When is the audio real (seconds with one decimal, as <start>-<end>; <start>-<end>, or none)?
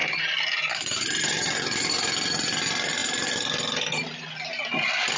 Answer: 0.0-5.2